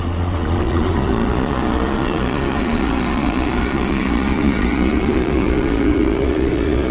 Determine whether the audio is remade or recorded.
remade